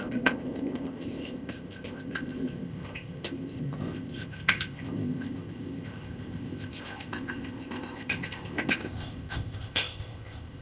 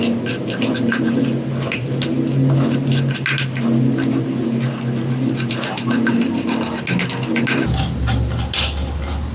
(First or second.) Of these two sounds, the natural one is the second